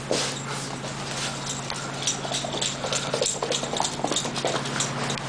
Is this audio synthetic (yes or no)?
no